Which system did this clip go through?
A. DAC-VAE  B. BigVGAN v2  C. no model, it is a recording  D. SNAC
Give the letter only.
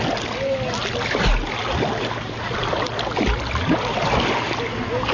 C